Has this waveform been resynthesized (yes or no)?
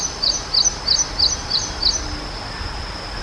no